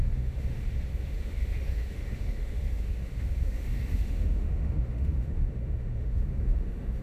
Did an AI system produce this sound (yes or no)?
yes